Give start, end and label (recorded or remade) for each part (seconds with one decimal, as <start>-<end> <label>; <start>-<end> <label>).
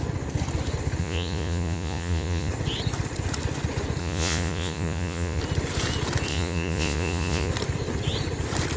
0.0-1.0 recorded; 1.0-2.5 remade; 2.5-4.0 recorded; 4.0-5.4 remade; 5.4-6.3 recorded; 6.3-7.5 remade; 7.5-8.8 recorded